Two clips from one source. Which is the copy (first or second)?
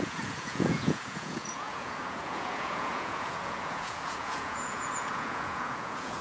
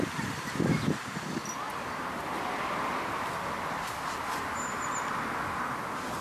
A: first